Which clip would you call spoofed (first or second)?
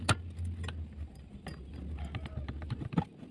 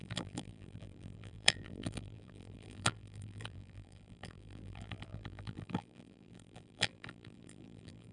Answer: second